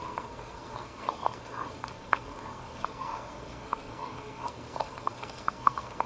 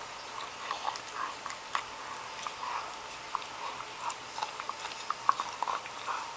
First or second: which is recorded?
second